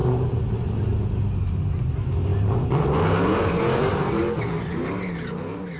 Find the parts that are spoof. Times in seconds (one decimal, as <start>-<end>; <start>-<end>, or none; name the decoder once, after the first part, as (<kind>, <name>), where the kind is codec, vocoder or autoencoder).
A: 0.0-1.2 (vocoder, BigVGAN v2); 2.3-4.2